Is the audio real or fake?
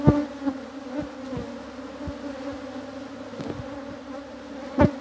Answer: real